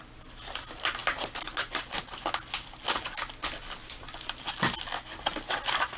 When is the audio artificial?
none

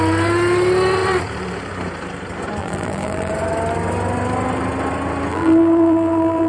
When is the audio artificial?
2.6-3.3 (vocoder, BigVGAN v2); 5.3-6.5